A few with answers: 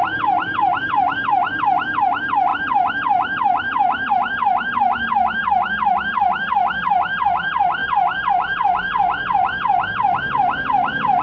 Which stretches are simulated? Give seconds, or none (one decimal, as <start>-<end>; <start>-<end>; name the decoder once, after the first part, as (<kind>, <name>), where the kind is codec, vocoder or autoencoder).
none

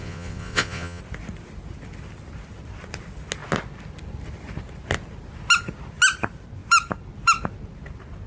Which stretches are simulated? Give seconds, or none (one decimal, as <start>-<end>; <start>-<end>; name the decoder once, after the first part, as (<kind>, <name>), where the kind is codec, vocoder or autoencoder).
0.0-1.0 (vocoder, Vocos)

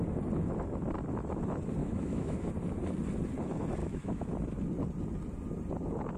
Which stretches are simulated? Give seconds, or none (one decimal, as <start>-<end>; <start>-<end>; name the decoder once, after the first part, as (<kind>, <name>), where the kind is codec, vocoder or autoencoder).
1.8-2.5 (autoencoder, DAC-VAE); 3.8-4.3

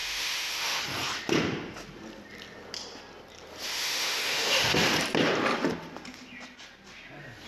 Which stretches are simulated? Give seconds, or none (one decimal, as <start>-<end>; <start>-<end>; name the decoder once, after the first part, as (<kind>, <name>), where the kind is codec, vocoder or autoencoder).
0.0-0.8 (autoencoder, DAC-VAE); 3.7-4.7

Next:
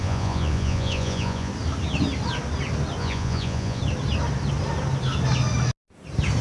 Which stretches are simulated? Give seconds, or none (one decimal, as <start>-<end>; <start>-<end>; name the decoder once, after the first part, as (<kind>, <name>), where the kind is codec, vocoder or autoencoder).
0.0-1.5 (vocoder, Vocos); 3.0-3.8

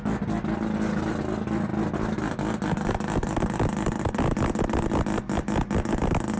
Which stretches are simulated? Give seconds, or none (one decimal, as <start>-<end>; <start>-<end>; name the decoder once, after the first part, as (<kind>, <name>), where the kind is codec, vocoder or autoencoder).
none